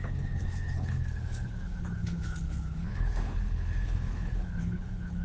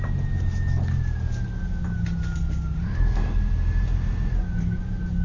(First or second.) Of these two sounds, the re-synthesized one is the first